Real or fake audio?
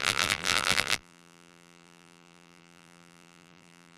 fake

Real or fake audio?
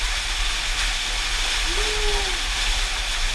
real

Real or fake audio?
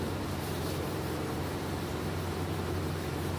fake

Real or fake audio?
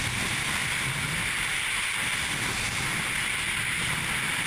real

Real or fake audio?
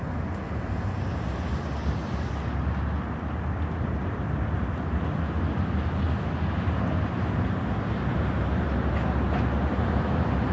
real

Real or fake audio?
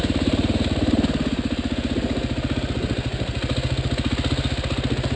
real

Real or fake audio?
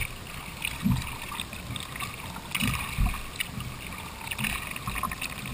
real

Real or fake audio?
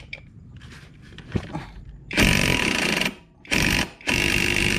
fake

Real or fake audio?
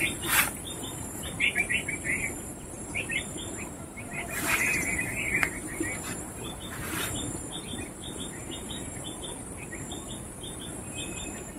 fake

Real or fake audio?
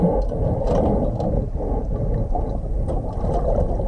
real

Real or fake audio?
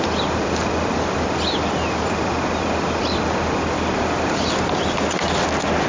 real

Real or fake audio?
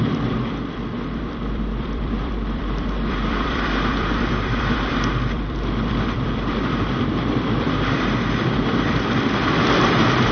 fake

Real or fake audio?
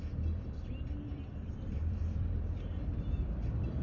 fake